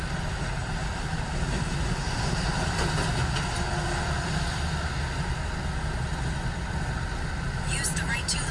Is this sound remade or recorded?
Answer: recorded